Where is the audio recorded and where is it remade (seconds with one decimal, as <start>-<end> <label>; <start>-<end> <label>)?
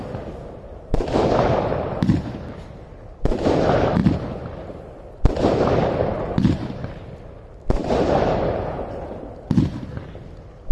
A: 0.0-10.7 recorded